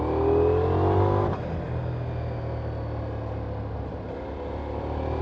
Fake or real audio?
real